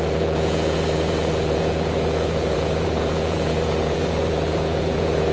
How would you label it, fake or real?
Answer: fake